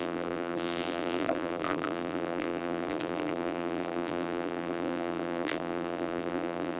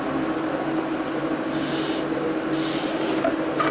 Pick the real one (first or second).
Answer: second